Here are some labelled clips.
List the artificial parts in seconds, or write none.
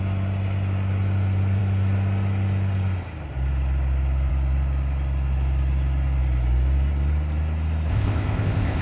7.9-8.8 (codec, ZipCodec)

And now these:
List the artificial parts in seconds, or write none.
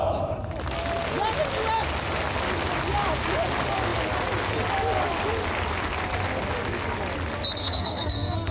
7.6-8.5 (codec, SNAC)